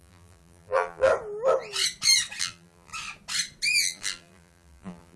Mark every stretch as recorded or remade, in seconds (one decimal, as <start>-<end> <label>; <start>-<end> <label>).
0.0-1.1 remade; 1.1-2.4 recorded; 2.4-2.9 remade; 2.9-3.8 recorded; 3.8-5.2 remade